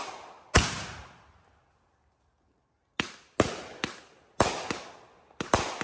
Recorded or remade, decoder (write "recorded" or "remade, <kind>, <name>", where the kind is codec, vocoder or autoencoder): recorded